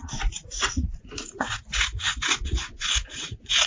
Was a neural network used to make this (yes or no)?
yes